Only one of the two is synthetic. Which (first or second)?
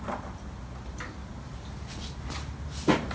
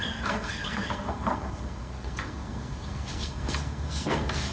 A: second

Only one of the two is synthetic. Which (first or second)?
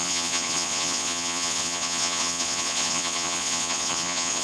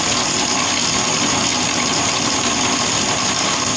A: first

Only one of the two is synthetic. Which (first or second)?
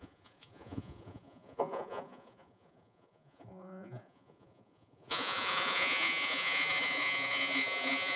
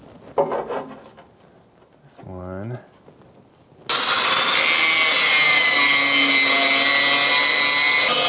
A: first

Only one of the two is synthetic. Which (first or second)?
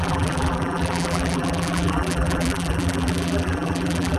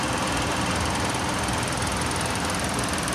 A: first